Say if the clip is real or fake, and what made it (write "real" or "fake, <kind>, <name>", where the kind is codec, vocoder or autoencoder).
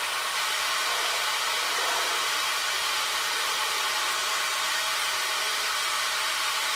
fake, vocoder, BigVGAN v2